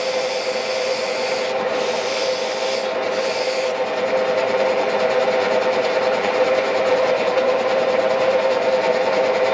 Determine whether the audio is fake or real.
fake